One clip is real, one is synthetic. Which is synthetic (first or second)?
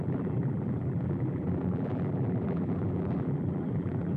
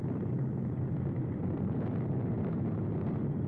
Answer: first